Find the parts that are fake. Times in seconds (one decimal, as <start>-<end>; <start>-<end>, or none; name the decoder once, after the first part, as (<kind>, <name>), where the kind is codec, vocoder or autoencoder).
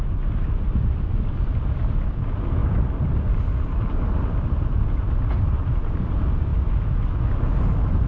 2.6-3.2 (vocoder, BigVGAN v2)